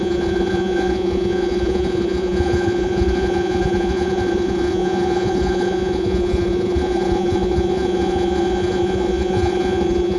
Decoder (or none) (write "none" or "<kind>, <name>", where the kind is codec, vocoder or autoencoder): vocoder, Vocos